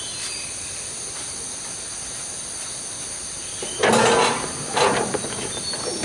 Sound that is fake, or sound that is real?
real